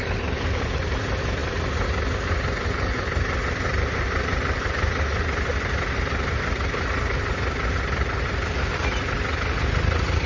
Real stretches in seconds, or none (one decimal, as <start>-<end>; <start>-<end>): none